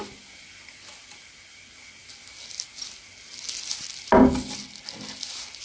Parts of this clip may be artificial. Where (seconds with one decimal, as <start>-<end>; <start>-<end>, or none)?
none